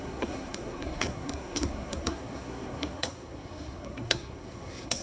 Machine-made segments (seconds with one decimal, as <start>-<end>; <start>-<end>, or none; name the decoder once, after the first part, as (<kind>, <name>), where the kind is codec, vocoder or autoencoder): 0.0-5.0 (codec, SNAC)